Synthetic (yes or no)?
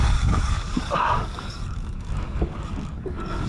yes